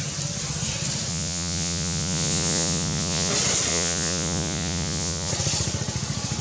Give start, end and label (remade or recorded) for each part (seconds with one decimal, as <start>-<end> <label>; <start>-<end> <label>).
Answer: 0.0-1.1 recorded; 1.1-3.3 remade; 3.3-3.7 recorded; 3.7-5.3 remade; 5.3-6.4 recorded

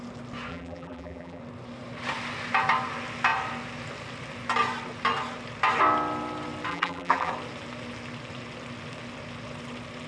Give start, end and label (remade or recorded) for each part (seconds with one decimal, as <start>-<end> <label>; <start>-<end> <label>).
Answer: 0.0-0.5 recorded; 0.5-1.4 remade; 1.4-6.7 recorded; 6.7-7.3 remade; 7.3-10.1 recorded

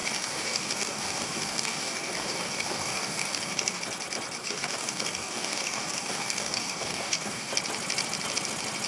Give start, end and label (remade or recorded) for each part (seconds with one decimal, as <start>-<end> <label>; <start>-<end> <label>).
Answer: 0.0-3.8 remade; 3.8-4.4 recorded; 4.4-7.5 remade; 7.5-8.9 recorded

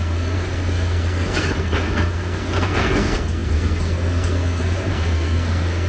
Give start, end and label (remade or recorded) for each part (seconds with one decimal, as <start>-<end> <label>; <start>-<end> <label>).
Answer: 0.0-5.9 remade

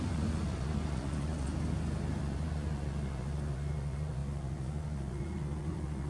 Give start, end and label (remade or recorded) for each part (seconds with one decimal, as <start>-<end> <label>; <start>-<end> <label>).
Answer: 0.0-1.5 remade; 1.5-2.2 recorded; 2.2-6.1 remade

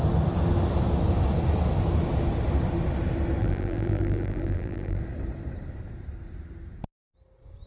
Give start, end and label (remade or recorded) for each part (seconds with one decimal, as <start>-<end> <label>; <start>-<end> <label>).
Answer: 0.0-3.4 recorded; 3.4-5.0 remade; 5.0-7.7 recorded

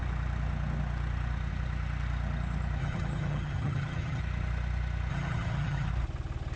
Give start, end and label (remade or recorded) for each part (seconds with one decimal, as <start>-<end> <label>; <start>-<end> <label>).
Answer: 0.0-2.8 recorded; 2.8-4.2 remade; 4.2-5.1 recorded; 5.1-5.9 remade; 5.9-6.6 recorded

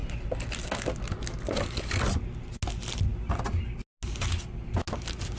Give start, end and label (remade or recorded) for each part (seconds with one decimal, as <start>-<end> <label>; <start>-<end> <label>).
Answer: 0.0-5.4 recorded